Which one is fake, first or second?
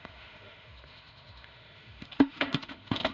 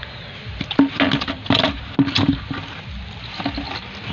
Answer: first